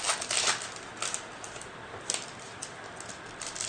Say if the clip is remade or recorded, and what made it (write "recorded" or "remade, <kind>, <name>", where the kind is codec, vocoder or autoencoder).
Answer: recorded